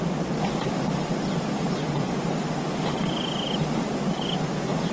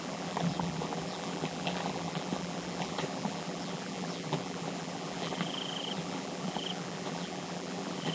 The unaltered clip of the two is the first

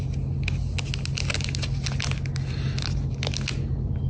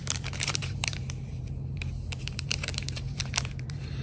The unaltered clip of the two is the first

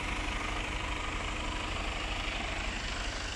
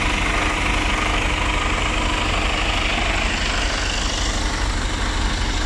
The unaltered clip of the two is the second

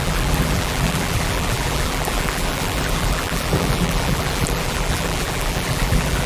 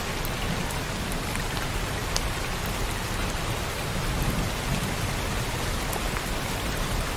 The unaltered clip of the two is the second